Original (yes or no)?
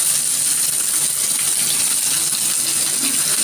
yes